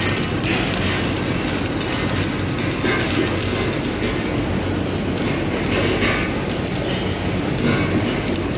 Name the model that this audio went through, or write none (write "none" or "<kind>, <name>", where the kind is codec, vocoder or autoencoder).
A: none